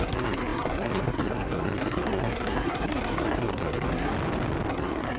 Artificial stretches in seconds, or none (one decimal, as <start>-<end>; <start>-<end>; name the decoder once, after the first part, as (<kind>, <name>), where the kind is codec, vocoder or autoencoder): 0.0-4.1 (codec, SNAC); 4.7-5.2